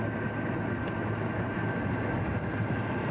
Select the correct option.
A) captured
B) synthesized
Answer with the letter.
A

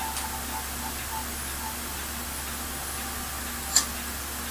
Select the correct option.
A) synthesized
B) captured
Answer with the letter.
B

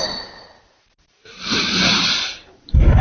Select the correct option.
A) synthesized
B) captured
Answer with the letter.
A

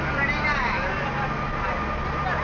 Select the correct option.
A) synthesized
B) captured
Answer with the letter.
B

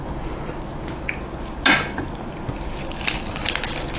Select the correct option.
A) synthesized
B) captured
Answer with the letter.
B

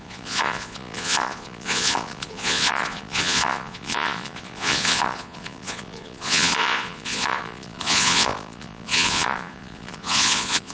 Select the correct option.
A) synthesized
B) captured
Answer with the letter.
A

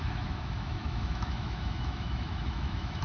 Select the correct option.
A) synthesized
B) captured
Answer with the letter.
A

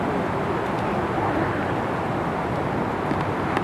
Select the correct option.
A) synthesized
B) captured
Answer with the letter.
B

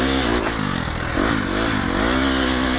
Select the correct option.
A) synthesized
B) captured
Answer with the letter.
B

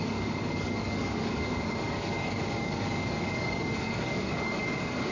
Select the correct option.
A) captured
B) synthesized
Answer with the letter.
B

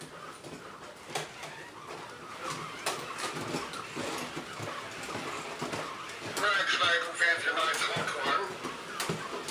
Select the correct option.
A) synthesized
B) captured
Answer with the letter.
B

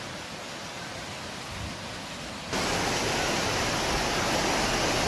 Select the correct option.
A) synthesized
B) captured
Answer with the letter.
B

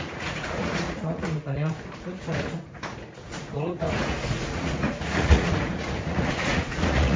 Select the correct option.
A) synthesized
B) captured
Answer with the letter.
A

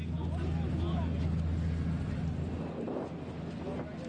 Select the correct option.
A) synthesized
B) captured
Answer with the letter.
B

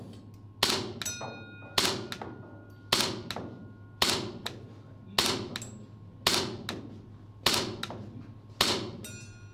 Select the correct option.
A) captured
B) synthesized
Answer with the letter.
A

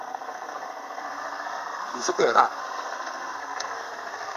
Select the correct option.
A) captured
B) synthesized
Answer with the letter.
B